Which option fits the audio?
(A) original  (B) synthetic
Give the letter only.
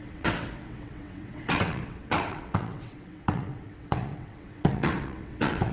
B